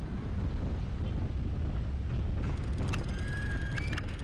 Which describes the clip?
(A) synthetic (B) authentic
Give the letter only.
B